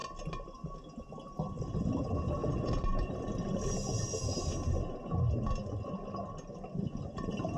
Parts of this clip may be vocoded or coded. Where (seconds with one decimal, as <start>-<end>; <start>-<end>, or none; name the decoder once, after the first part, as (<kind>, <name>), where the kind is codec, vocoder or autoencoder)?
2.4-3.1 (vocoder, BigVGAN v2)